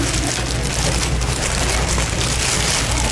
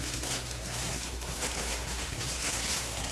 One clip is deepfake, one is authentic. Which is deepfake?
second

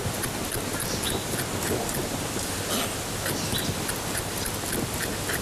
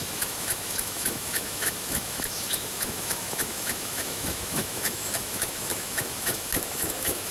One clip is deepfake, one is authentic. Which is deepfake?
second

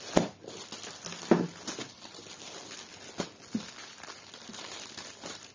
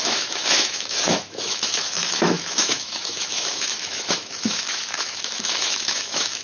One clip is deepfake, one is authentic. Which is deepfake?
second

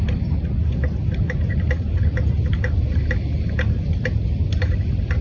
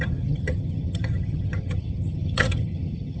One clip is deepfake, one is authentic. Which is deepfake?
second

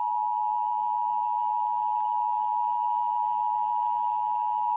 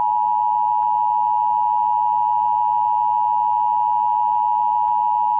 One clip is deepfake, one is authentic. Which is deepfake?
first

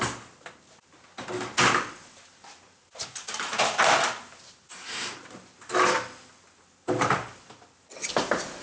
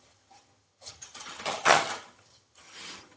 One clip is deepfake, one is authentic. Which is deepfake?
second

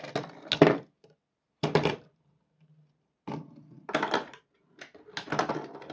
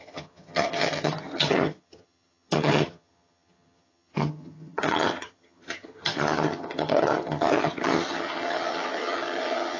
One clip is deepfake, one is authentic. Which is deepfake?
second